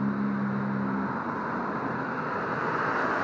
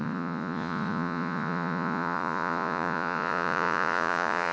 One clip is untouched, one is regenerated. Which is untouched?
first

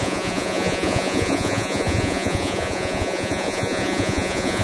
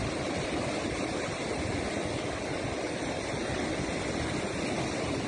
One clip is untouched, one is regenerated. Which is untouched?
second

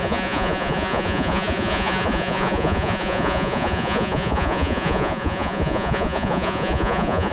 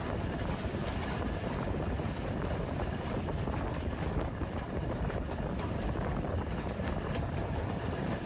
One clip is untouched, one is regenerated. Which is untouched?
second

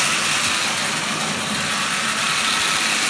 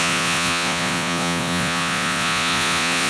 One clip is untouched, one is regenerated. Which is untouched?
first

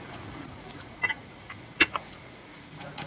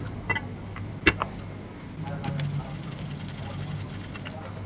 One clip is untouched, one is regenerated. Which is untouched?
second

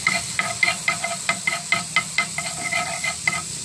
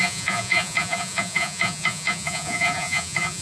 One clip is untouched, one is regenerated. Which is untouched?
first